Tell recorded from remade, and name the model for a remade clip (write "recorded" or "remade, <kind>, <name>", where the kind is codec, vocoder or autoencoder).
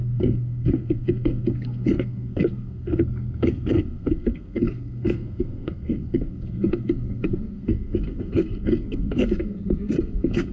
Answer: remade, codec, SNAC